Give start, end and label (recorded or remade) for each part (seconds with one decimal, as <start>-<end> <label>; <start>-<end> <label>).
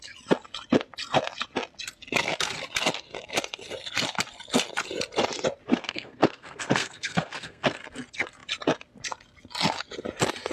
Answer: 0.0-5.7 recorded; 5.7-7.8 remade; 7.8-10.5 recorded